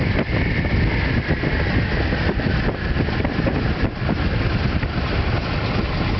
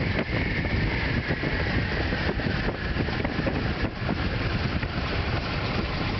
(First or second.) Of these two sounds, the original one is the first